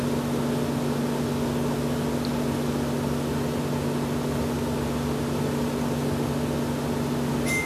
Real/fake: real